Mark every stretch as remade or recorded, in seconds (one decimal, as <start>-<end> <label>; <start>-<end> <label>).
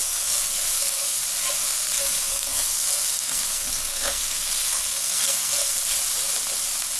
0.0-1.2 remade; 1.2-1.6 recorded; 1.6-5.8 remade; 5.8-7.0 recorded